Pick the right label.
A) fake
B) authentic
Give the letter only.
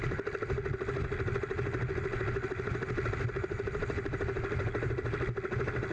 B